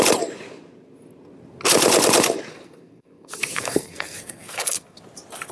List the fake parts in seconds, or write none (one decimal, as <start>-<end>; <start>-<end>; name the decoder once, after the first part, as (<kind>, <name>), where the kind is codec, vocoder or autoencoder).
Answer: 2.5-5.0 (codec, SNAC)

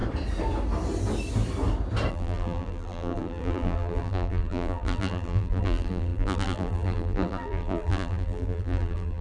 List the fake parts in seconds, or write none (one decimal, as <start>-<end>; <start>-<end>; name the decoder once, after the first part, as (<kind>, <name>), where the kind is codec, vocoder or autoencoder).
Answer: 2.1-9.2 (vocoder, BigVGAN v2)

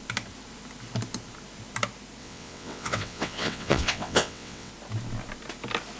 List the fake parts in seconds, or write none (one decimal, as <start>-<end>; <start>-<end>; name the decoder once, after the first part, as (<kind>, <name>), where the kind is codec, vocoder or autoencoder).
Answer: 2.2-4.7 (vocoder, WaveNeXt)

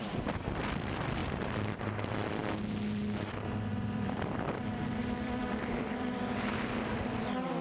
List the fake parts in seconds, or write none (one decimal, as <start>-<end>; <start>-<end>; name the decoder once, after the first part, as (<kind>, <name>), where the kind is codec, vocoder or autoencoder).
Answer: 0.0-2.4 (vocoder, BigVGAN v2); 3.7-7.6

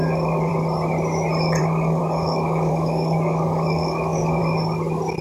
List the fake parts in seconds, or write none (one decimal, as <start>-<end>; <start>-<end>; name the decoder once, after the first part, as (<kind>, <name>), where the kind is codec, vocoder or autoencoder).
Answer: 0.0-0.5 (codec, DAC); 1.6-4.4

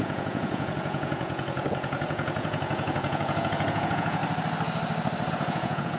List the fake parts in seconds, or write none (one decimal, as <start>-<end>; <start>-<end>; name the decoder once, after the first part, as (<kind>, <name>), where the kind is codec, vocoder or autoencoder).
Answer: 0.0-4.2 (vocoder, Vocos); 5.3-6.0

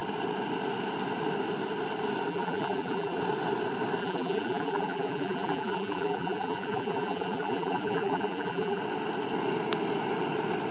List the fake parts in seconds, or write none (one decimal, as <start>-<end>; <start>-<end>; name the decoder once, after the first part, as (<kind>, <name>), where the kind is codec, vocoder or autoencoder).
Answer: 2.3-3.2 (vocoder, BigVGAN v2); 4.0-8.8

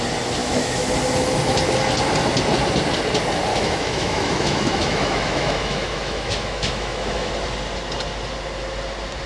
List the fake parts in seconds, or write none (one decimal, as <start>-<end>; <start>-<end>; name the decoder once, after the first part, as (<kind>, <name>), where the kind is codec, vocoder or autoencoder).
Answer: 0.4-0.9 (autoencoder, DAC-VAE); 3.5-7.3